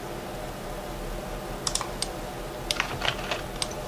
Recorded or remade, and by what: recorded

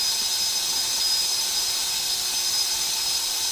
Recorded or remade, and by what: recorded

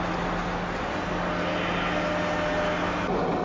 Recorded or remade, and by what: recorded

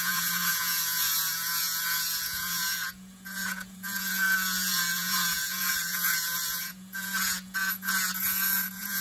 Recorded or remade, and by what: remade, vocoder, Vocos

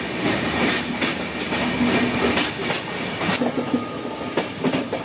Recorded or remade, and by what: recorded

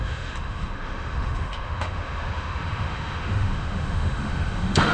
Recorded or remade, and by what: remade, autoencoder, DAC-VAE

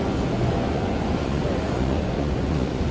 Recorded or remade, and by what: remade, vocoder, Vocos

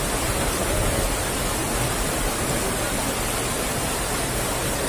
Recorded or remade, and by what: recorded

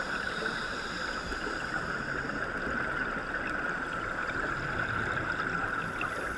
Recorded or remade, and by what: recorded